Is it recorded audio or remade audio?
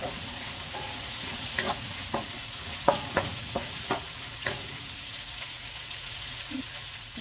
remade